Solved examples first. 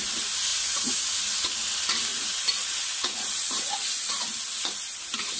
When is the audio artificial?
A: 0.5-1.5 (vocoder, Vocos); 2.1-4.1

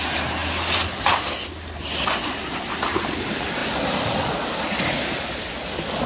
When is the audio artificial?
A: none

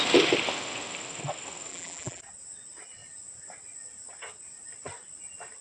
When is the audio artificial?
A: 1.7-2.2 (vocoder, BigVGAN v2)

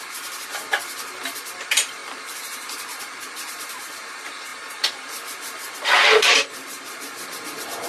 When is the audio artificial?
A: 0.0-0.5 (vocoder, BigVGAN v2); 1.4-7.9

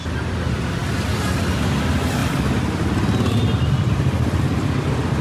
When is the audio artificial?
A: none

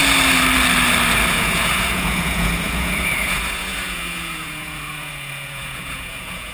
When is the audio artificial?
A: 1.3-6.5 (vocoder, Vocos)